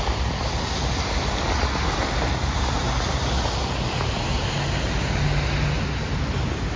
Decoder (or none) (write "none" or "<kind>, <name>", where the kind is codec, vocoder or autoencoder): none